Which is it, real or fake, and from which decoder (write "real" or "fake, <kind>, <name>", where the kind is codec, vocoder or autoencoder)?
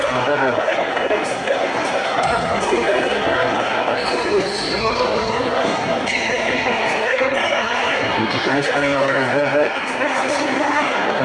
fake, codec, SNAC